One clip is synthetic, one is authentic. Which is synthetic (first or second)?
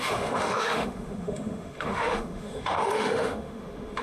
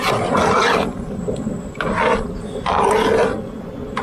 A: first